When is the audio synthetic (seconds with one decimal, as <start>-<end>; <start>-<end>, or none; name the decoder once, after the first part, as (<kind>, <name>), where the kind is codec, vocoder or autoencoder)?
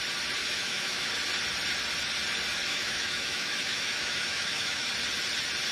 0.4-1.1 (autoencoder, DAC-VAE); 2.6-4.9